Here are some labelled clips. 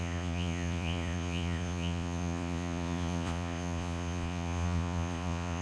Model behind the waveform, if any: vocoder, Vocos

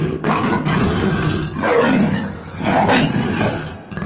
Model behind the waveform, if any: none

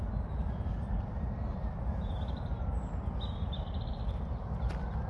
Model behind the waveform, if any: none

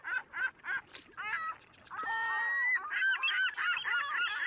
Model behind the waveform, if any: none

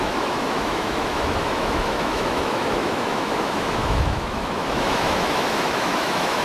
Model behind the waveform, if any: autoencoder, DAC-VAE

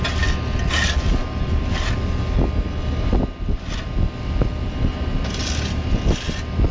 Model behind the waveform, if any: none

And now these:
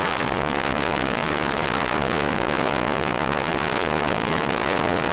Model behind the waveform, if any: vocoder, Vocos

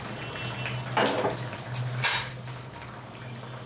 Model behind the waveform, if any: none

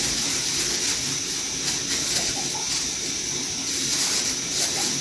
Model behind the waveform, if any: none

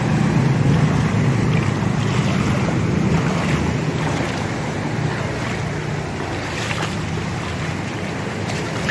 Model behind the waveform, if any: none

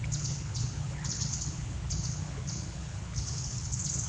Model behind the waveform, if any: codec, HILCodec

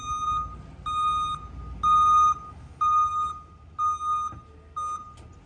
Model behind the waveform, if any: none